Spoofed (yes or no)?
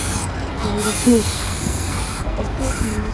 yes